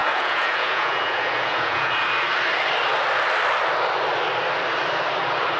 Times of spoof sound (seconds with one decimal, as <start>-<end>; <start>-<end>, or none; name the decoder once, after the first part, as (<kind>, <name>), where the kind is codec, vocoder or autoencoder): 0.0-1.9 (vocoder, Vocos)